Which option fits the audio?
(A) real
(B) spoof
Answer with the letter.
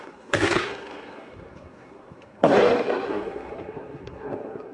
B